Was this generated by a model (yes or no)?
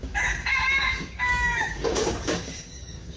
yes